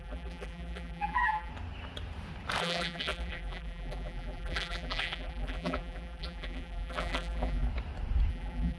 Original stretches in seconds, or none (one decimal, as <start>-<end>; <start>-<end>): 1.5-2.6; 7.7-8.3